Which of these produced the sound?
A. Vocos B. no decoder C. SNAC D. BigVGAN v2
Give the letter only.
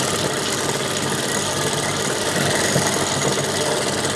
B